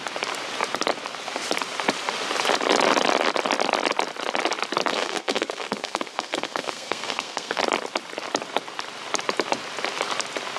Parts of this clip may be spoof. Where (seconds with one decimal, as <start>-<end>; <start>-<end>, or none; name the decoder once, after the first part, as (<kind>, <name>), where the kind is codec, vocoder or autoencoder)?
4.9-7.6 (codec, SNAC)